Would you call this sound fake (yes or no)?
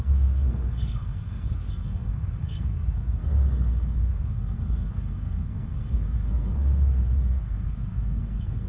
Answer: yes